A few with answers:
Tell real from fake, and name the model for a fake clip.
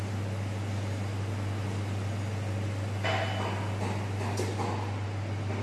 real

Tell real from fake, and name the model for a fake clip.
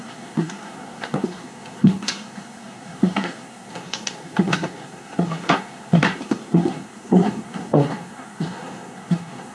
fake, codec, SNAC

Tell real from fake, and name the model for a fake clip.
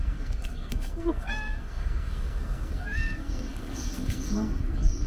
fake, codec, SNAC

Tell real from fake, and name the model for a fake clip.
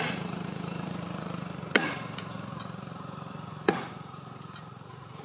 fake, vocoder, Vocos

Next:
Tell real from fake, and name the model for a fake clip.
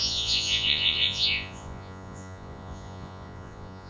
fake, vocoder, Vocos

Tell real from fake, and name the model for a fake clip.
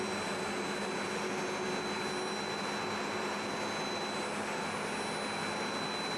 real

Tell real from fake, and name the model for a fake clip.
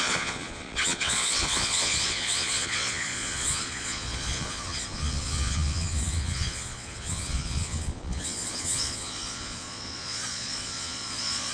fake, vocoder, Vocos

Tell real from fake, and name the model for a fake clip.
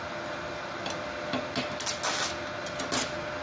real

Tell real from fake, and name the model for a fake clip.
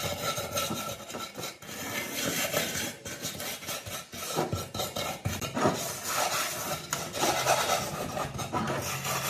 real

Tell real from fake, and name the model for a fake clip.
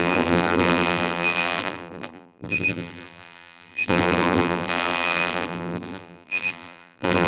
fake, vocoder, BigVGAN v2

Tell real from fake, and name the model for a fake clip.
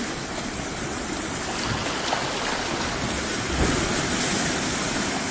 real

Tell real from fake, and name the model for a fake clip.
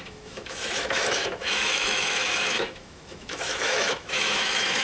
fake, autoencoder, DAC-VAE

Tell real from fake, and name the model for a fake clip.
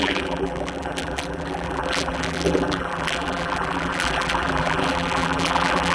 fake, vocoder, BigVGAN v2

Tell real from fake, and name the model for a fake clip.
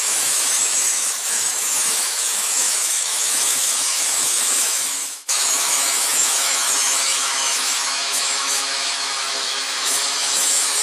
fake, autoencoder, DAC-VAE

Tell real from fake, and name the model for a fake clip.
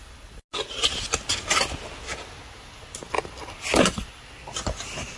real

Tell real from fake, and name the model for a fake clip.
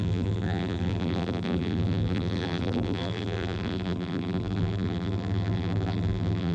fake, vocoder, BigVGAN v2